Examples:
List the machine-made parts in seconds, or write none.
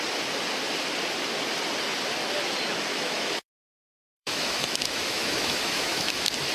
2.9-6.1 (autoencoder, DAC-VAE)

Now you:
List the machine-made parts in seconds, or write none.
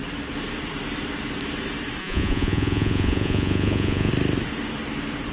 2.0-4.1 (vocoder, Vocos)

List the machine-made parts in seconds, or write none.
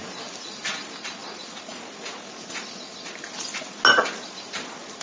none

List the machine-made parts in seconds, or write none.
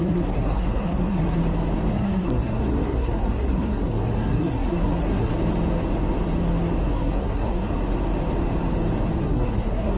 0.0-1.4 (codec, SNAC); 1.9-5.3; 6.9-7.7; 9.2-10.0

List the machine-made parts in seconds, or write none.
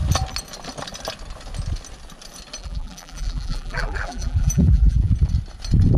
2.6-5.1 (vocoder, BigVGAN v2)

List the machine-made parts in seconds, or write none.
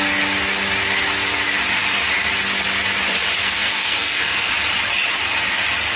3.4-4.5 (codec, SNAC)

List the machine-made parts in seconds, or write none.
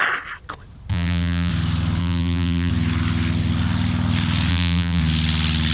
0.9-1.5 (vocoder, BigVGAN v2); 2.0-2.7; 4.5-5.0